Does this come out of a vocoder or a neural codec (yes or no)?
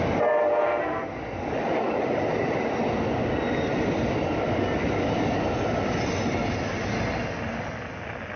no